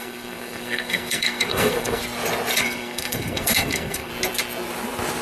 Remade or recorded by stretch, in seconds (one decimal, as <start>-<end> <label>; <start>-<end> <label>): 0.0-2.0 remade; 2.0-2.6 recorded; 2.6-4.1 remade; 4.1-5.2 recorded